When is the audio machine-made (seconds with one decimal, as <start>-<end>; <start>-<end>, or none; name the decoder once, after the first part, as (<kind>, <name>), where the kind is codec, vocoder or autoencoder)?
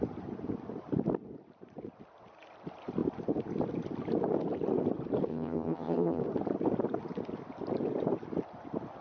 5.3-6.2 (vocoder, HiFi-GAN)